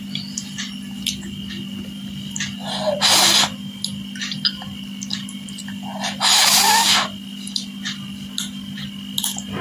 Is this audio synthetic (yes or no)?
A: no